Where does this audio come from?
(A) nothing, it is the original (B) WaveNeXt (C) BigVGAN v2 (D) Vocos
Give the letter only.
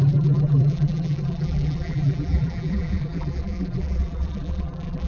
C